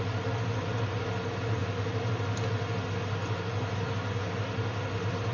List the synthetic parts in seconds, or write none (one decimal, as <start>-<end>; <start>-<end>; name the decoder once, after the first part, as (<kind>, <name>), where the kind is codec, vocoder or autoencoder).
none